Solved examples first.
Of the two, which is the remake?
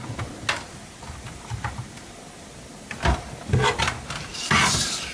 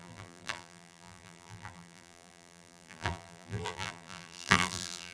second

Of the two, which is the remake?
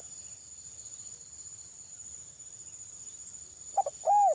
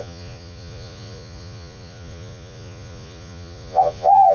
second